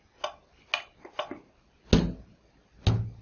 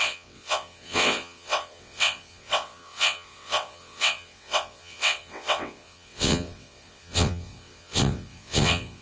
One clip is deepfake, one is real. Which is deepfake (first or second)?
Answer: second